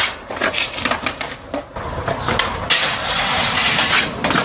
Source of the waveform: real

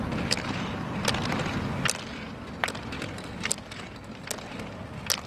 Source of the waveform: real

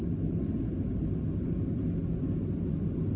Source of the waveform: real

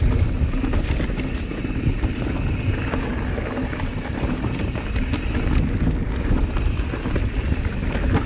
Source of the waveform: real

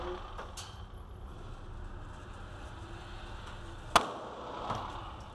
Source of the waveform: real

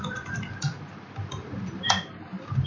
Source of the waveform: real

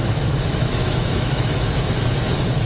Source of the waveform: fake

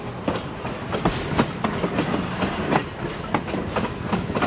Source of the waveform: real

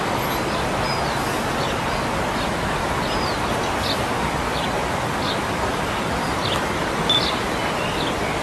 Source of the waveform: real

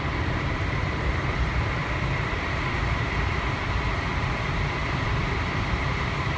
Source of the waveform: fake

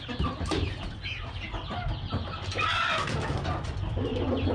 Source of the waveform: real